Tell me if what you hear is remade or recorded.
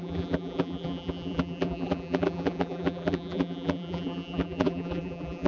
remade